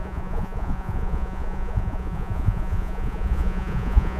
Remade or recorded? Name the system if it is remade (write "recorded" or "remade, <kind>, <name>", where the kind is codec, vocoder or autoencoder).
remade, vocoder, Vocos